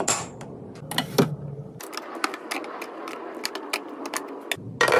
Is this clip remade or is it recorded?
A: recorded